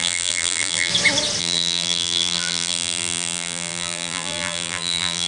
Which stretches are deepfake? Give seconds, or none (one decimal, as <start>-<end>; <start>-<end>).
0.0-0.9; 1.4-5.3